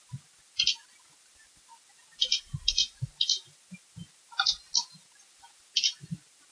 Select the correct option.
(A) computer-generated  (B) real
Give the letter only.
B